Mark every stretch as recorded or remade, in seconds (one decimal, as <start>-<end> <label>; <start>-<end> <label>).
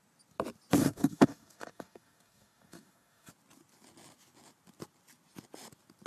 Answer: 0.0-0.8 recorded; 0.8-3.3 remade; 3.3-6.1 recorded